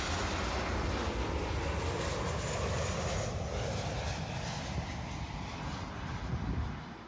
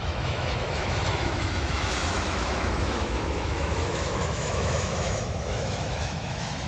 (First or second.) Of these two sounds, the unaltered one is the first